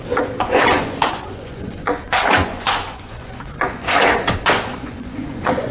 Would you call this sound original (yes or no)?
no